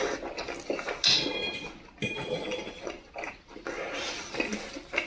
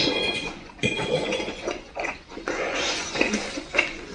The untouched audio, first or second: first